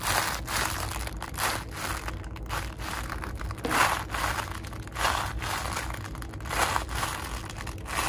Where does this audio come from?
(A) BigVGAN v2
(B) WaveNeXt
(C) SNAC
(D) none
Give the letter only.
D